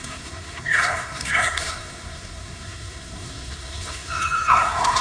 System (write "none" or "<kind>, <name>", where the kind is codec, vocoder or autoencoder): codec, SNAC